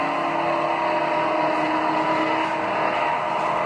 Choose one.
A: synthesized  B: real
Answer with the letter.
B